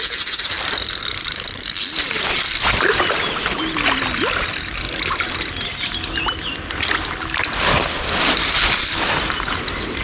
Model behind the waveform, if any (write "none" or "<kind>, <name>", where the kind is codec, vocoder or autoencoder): vocoder, BigVGAN v2